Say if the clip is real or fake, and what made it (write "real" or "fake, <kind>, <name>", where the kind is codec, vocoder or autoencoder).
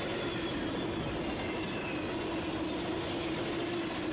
real